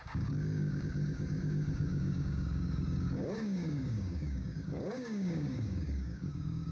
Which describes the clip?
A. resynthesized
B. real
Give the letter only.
A